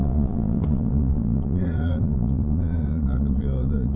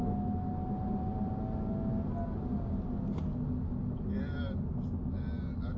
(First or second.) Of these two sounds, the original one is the second